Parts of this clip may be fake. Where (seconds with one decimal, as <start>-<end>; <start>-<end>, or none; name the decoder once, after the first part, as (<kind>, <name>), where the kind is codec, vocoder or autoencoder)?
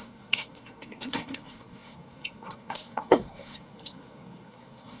0.0-5.0 (codec, SNAC)